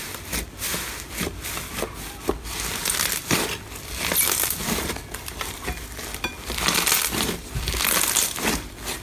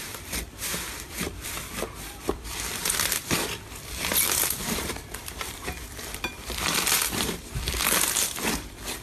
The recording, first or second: first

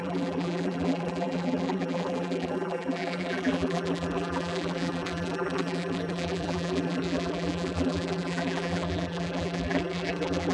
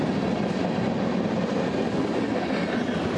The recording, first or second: second